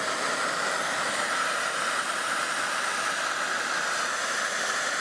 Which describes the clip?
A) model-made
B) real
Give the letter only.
B